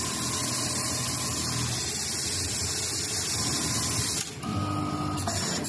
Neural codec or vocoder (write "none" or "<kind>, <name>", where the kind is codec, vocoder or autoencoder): none